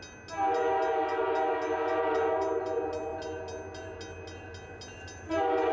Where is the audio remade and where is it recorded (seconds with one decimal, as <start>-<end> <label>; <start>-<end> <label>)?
0.0-5.7 recorded